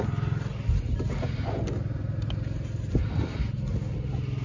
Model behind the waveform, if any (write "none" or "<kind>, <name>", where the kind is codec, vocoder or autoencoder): none